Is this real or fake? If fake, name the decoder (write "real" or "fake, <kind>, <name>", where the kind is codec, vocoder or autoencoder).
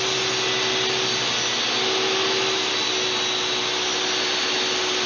real